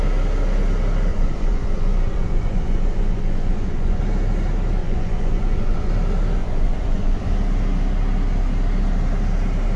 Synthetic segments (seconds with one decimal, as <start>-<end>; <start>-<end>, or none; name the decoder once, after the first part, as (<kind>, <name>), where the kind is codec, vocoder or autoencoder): 1.1-4.0 (vocoder, Vocos); 4.8-5.9; 6.4-7.3